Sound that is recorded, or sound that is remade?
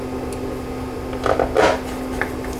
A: recorded